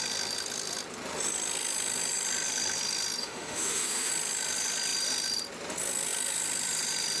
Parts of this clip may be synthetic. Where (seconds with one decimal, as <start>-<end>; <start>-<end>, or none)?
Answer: 3.2-4.1